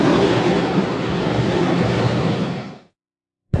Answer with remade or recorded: remade